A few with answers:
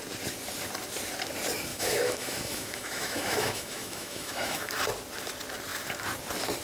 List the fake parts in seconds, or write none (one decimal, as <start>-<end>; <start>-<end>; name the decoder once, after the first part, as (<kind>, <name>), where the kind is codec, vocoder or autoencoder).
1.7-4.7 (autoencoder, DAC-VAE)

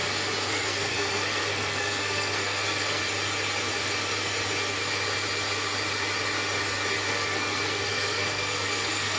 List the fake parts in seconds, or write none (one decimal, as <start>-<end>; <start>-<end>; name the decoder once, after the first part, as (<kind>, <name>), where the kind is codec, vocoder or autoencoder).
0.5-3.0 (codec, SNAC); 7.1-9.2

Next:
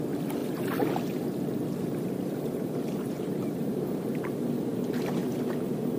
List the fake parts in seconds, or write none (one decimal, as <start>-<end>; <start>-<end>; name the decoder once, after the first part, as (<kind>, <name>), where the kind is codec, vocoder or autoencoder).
0.4-4.0 (vocoder, BigVGAN v2); 5.2-6.0